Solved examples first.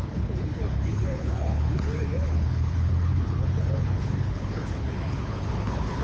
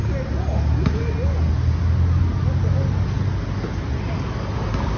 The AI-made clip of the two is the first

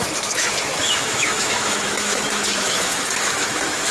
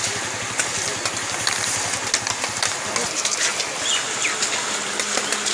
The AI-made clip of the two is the first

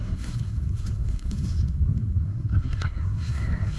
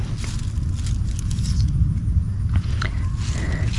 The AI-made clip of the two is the first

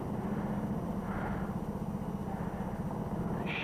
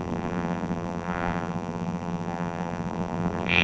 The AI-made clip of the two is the second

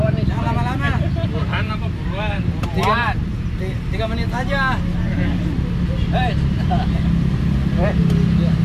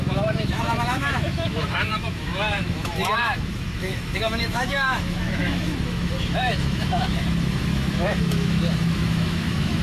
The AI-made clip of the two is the second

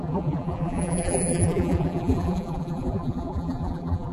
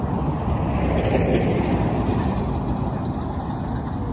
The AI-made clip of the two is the first